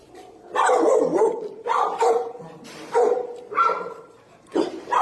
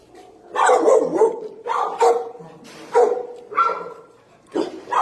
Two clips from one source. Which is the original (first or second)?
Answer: second